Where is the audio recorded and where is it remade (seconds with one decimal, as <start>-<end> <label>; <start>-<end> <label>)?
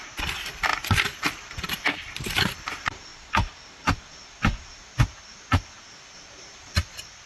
0.0-0.7 remade; 0.7-1.2 recorded; 1.2-3.1 remade; 3.1-6.3 recorded; 6.3-7.3 remade